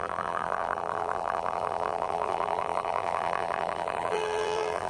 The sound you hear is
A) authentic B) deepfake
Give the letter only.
B